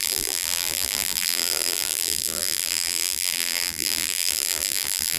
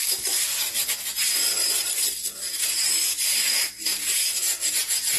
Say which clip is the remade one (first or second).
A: first